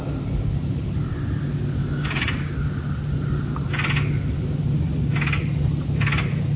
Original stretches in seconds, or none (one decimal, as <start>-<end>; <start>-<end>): 0.0-1.8; 2.5-6.6